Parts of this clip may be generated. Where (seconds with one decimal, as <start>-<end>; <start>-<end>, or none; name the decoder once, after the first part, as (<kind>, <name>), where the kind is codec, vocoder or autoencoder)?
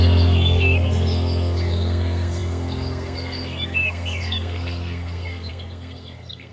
0.0-6.5 (codec, SNAC)